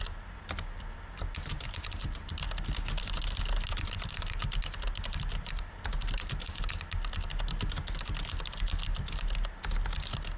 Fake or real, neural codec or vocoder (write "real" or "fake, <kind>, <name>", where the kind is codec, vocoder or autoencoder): real